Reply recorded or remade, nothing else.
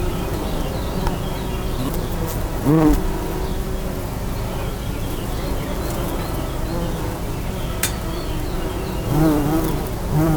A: recorded